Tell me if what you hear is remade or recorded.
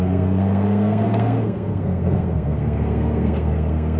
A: remade